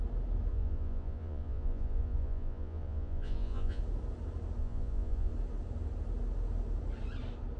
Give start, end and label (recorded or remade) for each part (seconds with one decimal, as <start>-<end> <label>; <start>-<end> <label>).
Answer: 0.0-0.5 recorded; 0.5-3.8 remade; 3.8-4.6 recorded; 4.6-5.3 remade; 5.3-7.6 recorded

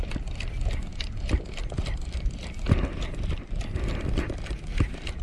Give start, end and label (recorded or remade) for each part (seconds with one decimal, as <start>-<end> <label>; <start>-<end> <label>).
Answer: 0.0-5.2 recorded

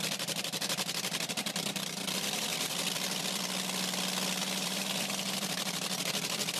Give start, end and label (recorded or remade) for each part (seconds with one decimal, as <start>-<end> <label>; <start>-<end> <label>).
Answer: 0.0-4.4 recorded; 4.4-6.0 remade; 6.0-6.6 recorded

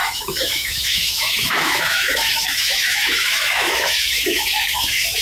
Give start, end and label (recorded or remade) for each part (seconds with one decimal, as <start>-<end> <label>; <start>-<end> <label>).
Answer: 0.0-5.2 remade

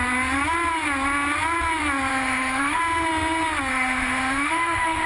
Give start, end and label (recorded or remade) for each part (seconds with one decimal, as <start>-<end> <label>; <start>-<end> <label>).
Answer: 0.0-2.1 recorded; 2.1-2.8 remade; 2.8-3.7 recorded; 3.7-5.1 remade

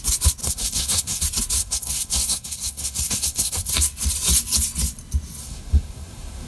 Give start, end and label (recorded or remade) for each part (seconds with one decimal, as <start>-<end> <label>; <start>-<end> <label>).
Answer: 0.0-0.4 recorded; 0.4-1.2 remade; 1.2-1.6 recorded; 1.6-3.7 remade; 3.7-5.4 recorded; 5.4-6.5 remade